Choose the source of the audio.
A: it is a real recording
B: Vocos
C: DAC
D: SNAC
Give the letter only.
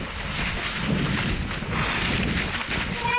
A